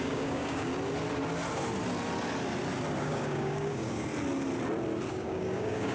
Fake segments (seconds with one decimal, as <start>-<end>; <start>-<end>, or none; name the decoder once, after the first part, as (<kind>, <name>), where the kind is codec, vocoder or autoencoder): 0.0-0.7 (codec, DAC); 3.0-4.1; 5.1-5.9